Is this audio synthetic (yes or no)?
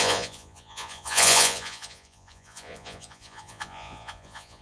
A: yes